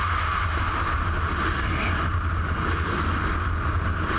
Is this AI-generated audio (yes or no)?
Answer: no